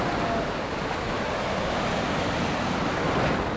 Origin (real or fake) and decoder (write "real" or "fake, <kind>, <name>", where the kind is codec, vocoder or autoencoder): real